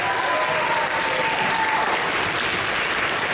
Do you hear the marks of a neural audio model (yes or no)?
no